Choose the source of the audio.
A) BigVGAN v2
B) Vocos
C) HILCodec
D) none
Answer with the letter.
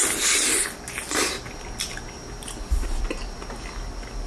D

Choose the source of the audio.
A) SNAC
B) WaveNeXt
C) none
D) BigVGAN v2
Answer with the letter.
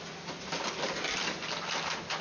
C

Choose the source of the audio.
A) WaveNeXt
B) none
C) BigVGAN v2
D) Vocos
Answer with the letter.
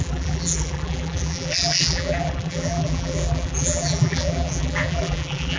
C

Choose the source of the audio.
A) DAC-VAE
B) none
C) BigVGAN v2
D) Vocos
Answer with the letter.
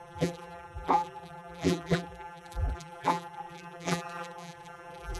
C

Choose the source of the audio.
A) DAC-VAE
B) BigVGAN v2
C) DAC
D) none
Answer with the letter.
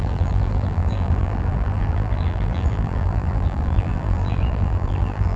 B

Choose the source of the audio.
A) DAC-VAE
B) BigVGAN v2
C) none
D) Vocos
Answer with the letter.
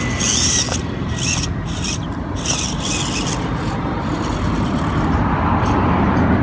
C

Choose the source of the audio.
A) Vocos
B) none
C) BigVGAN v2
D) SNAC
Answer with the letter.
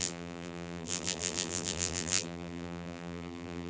C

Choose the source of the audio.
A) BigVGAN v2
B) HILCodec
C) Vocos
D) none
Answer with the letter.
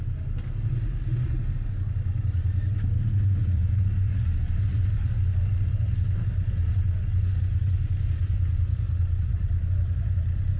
D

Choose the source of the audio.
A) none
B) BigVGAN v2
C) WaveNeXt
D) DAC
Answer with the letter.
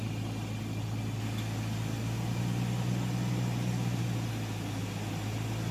A